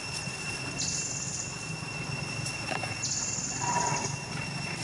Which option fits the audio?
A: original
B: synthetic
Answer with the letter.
A